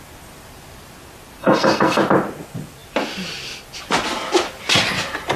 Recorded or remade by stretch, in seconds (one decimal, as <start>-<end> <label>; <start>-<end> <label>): 0.0-1.4 recorded; 1.4-2.0 remade; 2.0-5.4 recorded